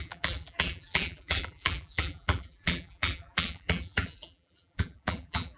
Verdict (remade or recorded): remade